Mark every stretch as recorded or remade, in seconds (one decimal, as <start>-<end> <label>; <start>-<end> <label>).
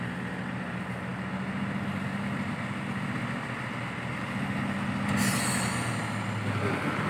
0.0-7.1 recorded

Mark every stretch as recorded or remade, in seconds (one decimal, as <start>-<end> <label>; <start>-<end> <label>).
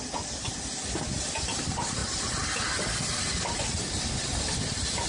0.0-5.1 recorded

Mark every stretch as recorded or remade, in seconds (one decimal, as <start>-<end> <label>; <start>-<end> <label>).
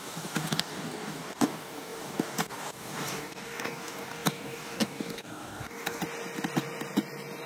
0.0-6.0 remade; 6.0-7.5 recorded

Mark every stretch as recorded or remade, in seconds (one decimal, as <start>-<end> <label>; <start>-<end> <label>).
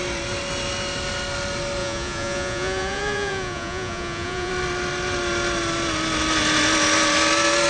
0.0-1.8 recorded; 1.8-4.5 remade; 4.5-7.7 recorded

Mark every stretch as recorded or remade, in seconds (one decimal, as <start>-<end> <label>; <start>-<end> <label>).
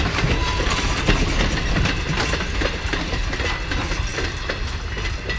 0.0-0.4 recorded; 0.4-2.2 remade; 2.2-5.4 recorded